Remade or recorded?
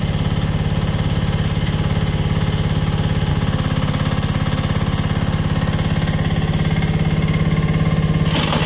recorded